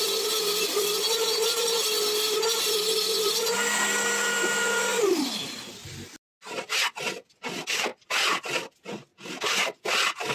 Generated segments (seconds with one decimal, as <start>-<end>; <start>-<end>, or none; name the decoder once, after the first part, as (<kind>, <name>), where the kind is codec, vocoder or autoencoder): none